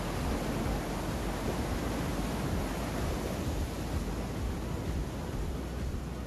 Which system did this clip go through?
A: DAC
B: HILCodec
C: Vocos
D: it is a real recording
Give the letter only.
D